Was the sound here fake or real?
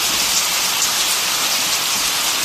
real